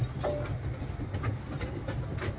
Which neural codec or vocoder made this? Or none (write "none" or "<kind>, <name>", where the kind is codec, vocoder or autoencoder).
none